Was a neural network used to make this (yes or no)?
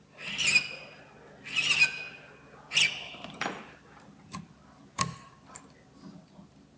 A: no